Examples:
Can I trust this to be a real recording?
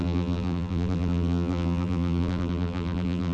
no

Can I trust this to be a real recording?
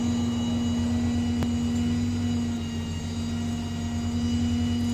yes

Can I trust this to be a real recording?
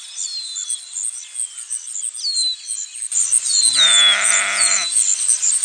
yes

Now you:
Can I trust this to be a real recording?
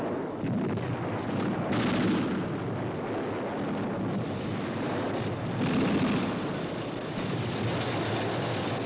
yes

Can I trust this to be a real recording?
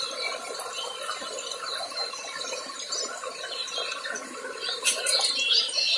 no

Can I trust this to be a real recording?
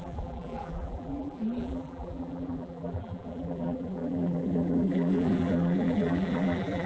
no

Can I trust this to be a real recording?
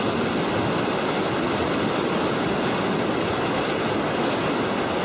yes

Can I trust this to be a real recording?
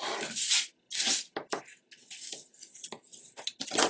yes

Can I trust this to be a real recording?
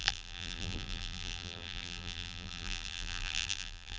no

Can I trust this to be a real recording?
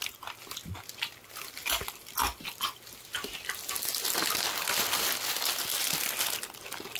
yes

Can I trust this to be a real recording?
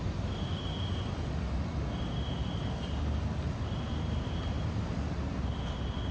yes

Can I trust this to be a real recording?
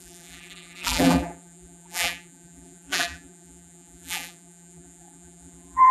no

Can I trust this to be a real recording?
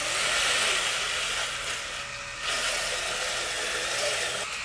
yes